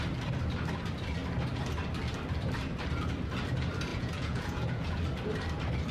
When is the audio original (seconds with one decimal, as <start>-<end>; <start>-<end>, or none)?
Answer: 0.0-3.9; 5.0-5.9